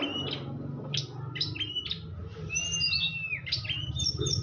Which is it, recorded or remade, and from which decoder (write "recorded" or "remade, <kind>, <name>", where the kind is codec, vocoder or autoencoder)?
recorded